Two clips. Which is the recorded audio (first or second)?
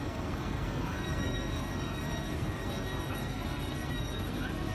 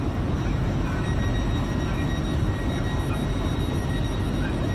second